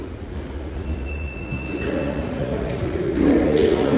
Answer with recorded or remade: remade